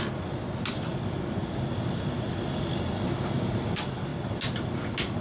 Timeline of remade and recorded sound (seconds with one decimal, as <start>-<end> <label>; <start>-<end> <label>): 0.0-5.2 recorded